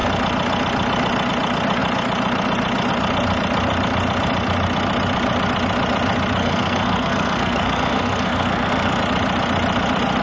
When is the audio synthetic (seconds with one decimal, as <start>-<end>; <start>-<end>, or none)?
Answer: 6.4-9.0